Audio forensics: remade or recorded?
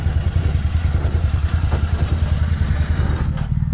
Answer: recorded